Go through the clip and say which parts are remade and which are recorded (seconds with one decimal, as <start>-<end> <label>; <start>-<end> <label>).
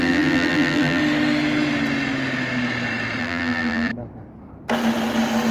0.0-1.0 remade; 1.0-3.2 recorded; 3.2-3.9 remade; 3.9-5.5 recorded